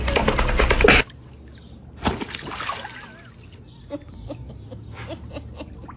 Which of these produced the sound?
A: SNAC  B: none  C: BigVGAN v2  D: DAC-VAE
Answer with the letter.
B